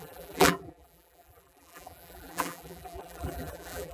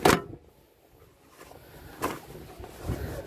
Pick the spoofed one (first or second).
first